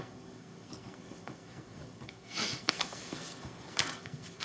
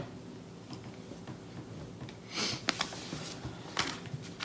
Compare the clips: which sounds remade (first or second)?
first